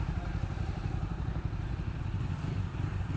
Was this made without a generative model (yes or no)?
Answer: no